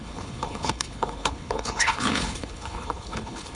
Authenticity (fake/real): fake